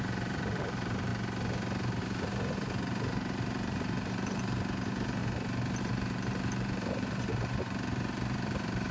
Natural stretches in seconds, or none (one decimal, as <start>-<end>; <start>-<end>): 1.1-2.0; 5.2-5.8

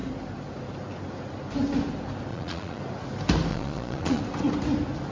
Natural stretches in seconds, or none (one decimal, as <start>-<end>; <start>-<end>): 0.0-2.3; 2.8-3.5; 4.2-5.1